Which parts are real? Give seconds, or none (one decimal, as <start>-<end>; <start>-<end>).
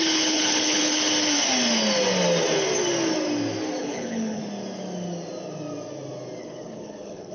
1.1-3.8; 4.4-6.4